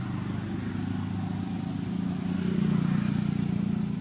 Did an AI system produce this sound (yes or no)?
no